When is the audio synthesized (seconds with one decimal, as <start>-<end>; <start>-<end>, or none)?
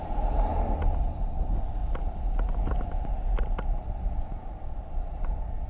none